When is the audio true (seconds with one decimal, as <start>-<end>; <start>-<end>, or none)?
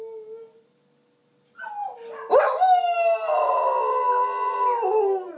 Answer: 0.0-5.4